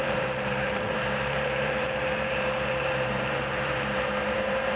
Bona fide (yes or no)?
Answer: no